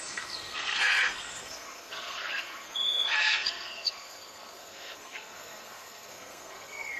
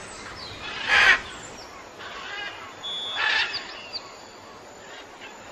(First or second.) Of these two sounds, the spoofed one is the first